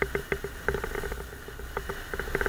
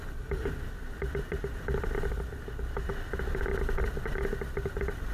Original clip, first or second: first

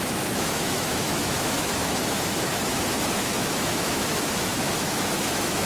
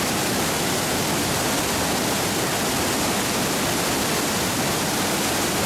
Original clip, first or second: second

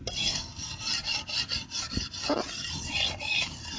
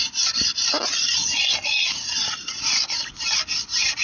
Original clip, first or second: second